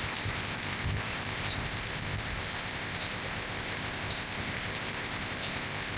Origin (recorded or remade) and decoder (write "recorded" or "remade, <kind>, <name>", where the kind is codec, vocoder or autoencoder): remade, codec, ZipCodec